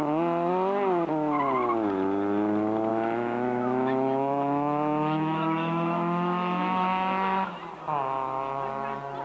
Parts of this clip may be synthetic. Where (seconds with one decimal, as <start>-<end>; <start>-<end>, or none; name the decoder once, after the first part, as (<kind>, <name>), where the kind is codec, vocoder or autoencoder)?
2.9-7.5 (autoencoder, DAC-VAE)